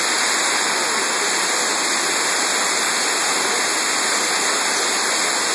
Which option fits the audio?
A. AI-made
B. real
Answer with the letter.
B